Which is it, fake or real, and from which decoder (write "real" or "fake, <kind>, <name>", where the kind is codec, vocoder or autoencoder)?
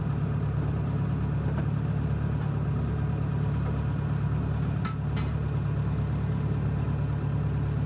real